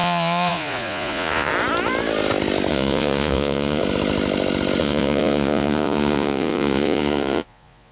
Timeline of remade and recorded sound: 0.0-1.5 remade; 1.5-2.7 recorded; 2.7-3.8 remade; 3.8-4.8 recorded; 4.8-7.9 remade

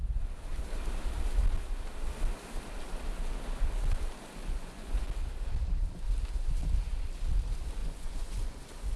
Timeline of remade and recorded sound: 0.0-4.4 recorded; 4.4-5.0 remade; 5.0-7.8 recorded; 7.8-8.6 remade; 8.6-9.0 recorded